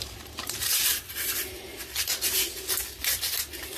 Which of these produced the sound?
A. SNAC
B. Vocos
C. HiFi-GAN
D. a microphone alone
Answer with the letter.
D